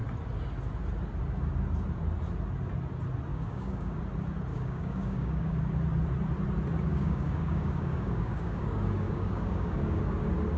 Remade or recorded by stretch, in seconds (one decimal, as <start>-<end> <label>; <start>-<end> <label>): 0.0-3.3 recorded; 3.3-4.0 remade; 4.0-4.5 recorded; 4.5-5.6 remade; 5.6-6.9 recorded; 6.9-10.0 remade; 10.0-10.6 recorded